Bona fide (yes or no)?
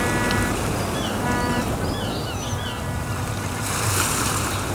yes